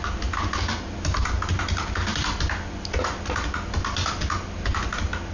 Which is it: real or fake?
real